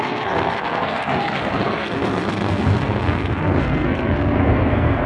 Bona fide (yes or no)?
no